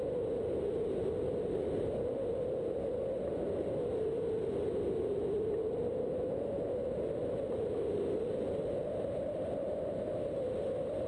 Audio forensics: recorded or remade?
recorded